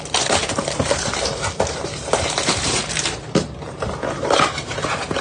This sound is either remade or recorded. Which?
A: remade